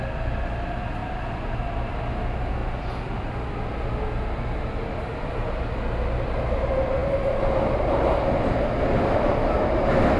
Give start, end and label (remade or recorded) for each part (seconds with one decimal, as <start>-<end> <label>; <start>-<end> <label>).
0.0-10.2 recorded